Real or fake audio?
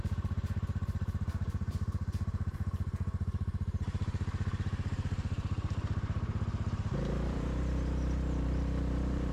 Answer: fake